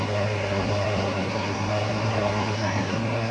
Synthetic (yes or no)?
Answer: yes